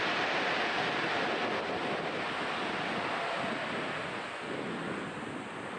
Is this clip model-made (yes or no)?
no